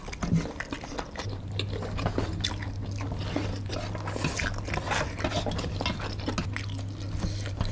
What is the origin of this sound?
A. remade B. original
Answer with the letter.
B